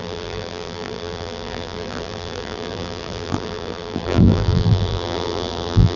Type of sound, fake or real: fake